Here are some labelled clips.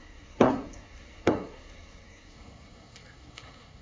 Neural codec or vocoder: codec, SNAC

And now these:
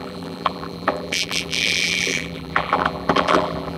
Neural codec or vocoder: vocoder, BigVGAN v2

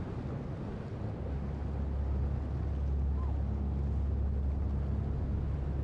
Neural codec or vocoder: none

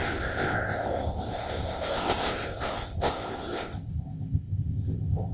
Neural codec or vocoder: codec, ZipCodec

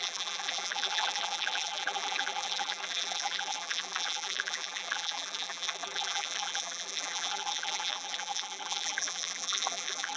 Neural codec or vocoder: vocoder, BigVGAN v2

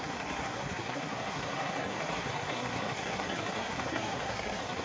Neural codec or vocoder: codec, SNAC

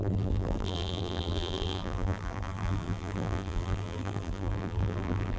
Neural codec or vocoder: vocoder, BigVGAN v2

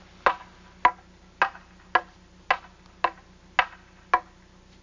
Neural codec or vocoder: none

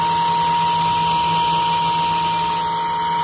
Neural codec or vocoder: none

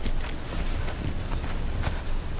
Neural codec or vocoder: none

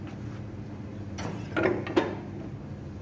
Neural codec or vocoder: none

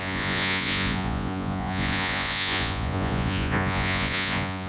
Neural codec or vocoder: vocoder, Vocos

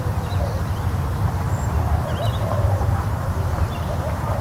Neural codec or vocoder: vocoder, BigVGAN v2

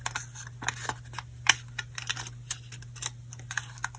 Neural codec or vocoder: none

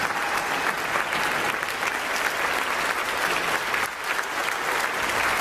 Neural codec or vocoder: none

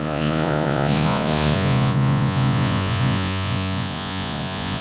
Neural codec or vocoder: vocoder, Vocos